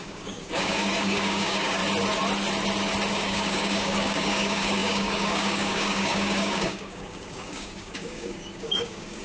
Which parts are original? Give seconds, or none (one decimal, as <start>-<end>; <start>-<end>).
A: 1.8-3.1